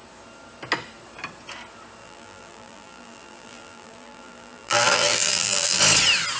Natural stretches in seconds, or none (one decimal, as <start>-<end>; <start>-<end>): 0.0-2.0; 5.8-6.4